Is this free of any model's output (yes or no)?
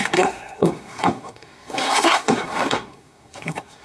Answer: no